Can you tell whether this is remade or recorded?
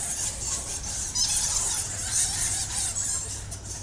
recorded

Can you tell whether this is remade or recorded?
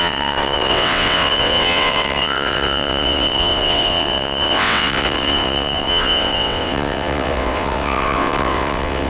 remade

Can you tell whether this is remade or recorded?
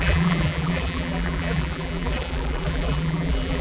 remade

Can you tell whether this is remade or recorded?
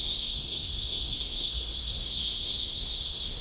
remade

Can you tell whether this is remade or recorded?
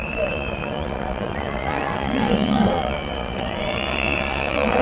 remade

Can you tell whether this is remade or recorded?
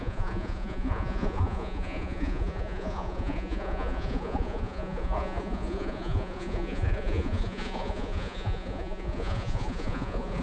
remade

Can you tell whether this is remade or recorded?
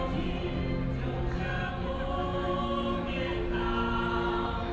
recorded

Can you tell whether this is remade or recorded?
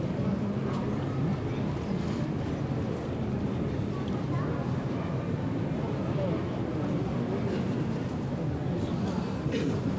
recorded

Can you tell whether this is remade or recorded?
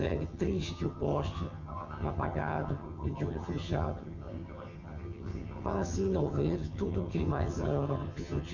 remade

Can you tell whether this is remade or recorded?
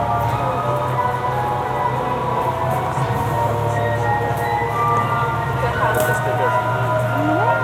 recorded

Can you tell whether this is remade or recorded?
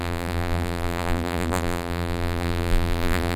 remade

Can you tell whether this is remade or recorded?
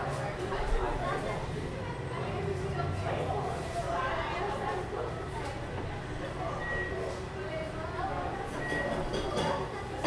recorded